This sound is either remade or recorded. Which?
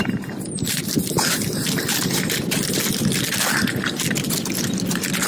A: recorded